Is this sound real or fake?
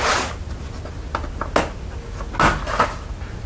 real